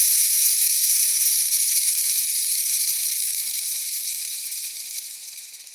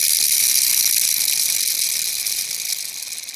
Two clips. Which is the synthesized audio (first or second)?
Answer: first